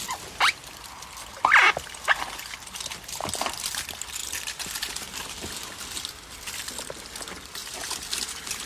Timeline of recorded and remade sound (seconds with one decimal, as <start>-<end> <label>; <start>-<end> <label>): 0.0-7.6 recorded; 7.6-8.7 remade

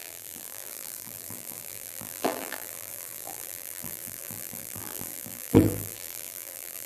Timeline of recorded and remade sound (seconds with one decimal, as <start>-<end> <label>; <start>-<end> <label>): 0.0-6.9 remade

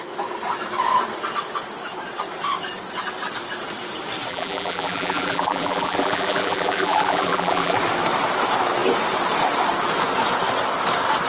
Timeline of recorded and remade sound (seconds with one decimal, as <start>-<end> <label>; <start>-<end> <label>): 0.0-4.3 recorded; 4.3-7.8 remade; 7.8-11.3 recorded

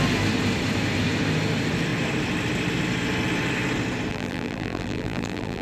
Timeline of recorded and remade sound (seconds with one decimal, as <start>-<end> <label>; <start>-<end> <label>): 0.0-4.1 recorded; 4.1-5.6 remade

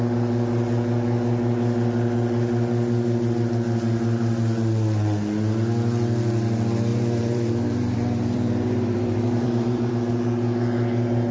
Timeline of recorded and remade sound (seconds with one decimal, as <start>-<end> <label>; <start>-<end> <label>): 0.0-6.9 recorded; 6.9-9.9 remade; 9.9-11.3 recorded

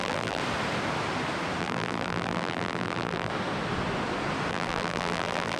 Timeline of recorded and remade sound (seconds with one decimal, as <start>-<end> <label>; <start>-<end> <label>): 0.0-0.4 remade; 0.4-1.6 recorded; 1.6-3.3 remade; 3.3-4.5 recorded; 4.5-5.6 remade